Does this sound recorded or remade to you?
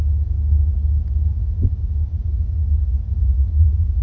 recorded